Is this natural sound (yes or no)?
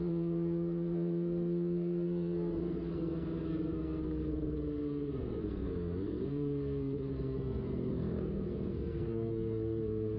no